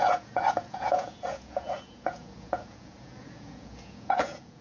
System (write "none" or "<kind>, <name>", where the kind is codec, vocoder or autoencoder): vocoder, Vocos